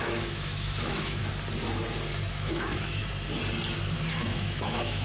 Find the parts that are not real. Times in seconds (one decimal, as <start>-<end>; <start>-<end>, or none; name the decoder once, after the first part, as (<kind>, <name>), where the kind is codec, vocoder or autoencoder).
0.0-1.2 (autoencoder, DAC-VAE); 2.3-3.0; 4.1-5.0